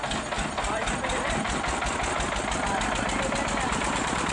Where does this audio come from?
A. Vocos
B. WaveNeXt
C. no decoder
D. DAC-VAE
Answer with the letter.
C